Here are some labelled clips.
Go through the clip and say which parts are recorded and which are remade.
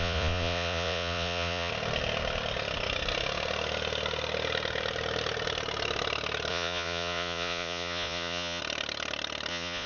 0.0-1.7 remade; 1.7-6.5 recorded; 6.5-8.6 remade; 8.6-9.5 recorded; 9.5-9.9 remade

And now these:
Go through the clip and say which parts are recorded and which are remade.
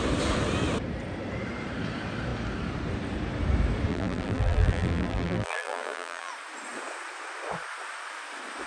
0.0-3.9 recorded; 3.9-6.3 remade; 6.3-8.7 recorded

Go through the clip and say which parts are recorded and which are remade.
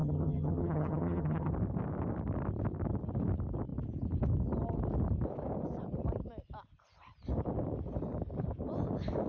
0.0-1.5 remade; 1.5-9.3 recorded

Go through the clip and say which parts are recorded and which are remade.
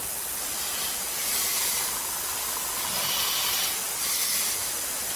0.0-5.2 recorded